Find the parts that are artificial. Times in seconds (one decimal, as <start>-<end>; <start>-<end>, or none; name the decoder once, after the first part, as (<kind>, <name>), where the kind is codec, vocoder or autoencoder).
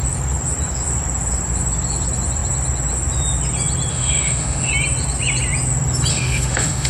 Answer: 3.9-4.7 (autoencoder, DAC-VAE); 6.1-6.9